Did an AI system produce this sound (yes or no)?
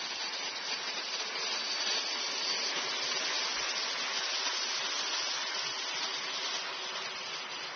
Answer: no